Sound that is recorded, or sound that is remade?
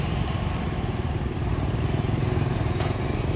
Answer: recorded